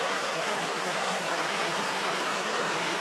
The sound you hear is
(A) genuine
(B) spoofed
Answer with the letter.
B